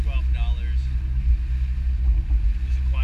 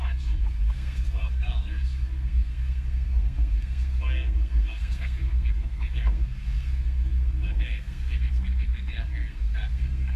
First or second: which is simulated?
second